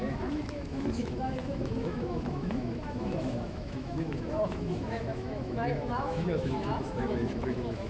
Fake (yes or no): yes